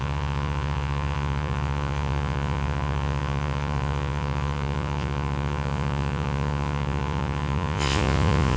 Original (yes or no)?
no